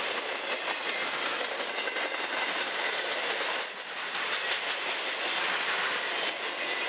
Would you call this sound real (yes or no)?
yes